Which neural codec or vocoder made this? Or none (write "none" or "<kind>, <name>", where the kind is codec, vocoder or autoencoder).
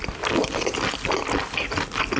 none